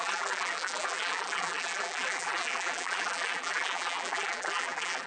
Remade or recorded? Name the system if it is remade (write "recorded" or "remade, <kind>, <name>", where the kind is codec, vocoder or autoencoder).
remade, vocoder, BigVGAN v2